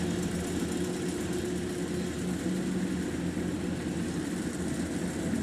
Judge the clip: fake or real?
real